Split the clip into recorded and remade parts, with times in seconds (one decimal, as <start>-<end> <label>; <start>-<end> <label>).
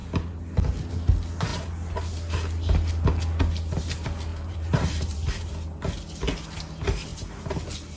0.0-4.3 recorded; 4.3-5.5 remade; 5.5-7.1 recorded; 7.1-7.6 remade; 7.6-8.0 recorded